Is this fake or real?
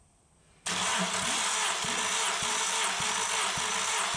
real